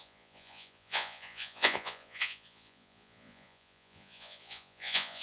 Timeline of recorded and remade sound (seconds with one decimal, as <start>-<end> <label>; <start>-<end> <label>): 0.0-5.2 remade